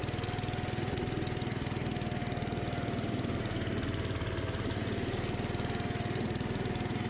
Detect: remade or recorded recorded